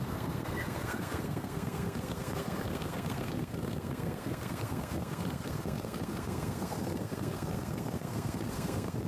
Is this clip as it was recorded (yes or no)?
no